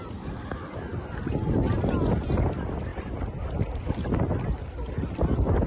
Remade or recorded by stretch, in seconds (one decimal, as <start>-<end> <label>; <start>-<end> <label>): 0.0-0.9 recorded; 0.9-1.4 remade; 1.4-2.9 recorded; 2.9-3.8 remade; 3.8-5.7 recorded